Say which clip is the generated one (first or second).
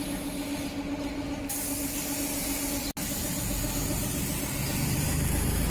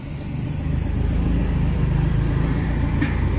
second